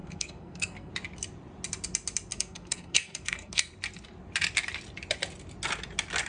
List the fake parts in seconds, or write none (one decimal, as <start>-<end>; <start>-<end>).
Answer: 0.0-0.9; 2.3-3.7